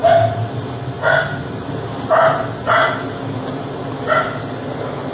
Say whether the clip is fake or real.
real